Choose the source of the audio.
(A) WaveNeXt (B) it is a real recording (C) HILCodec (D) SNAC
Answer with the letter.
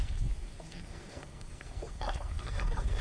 D